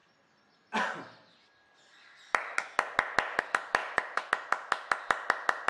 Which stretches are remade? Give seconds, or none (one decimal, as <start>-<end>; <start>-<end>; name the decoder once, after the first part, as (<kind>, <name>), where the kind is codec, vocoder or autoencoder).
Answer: 3.8-4.3 (vocoder, Vocos)